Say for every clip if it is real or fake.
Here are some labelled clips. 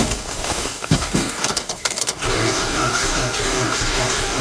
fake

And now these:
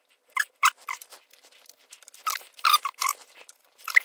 fake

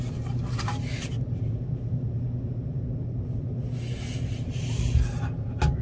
real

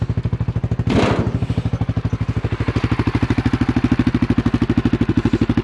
real